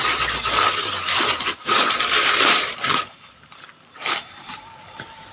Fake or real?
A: fake